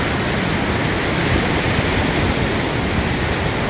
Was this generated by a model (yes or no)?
no